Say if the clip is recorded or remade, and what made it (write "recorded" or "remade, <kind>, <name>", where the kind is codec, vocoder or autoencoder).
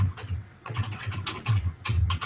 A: remade, vocoder, WaveNeXt